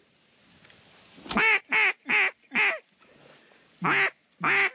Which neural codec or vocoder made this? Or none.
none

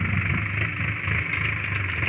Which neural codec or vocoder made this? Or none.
none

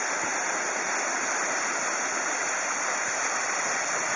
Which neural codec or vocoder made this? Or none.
none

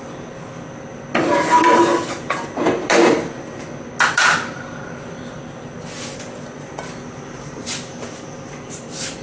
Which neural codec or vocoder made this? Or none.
none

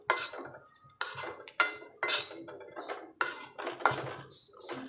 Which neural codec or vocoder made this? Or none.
none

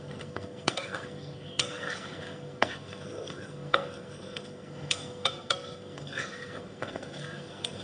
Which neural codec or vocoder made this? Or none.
codec, SNAC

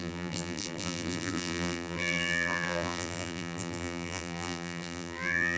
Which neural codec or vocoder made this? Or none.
vocoder, BigVGAN v2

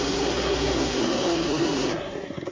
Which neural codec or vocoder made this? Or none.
codec, SNAC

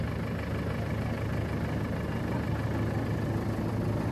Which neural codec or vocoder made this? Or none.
none